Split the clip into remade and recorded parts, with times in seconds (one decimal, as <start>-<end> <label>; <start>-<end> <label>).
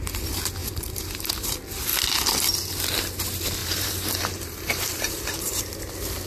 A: 0.0-0.6 recorded; 0.6-1.3 remade; 1.3-3.6 recorded; 3.6-5.6 remade; 5.6-6.3 recorded